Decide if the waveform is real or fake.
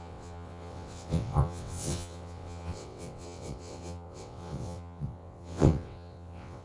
fake